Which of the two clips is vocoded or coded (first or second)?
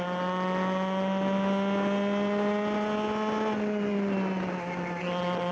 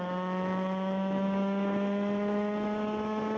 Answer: second